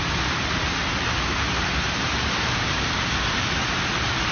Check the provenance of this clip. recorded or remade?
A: remade